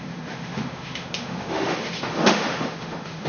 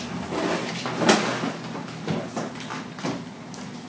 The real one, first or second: second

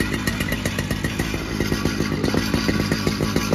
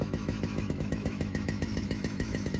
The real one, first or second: first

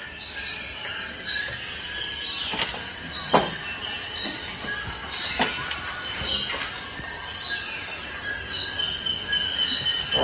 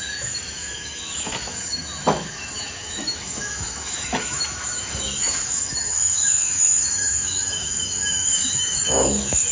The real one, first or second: first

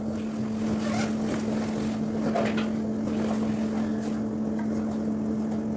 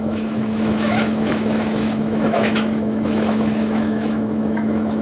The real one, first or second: first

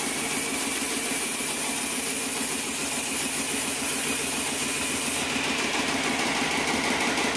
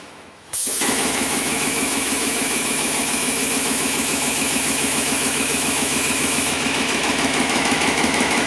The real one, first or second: first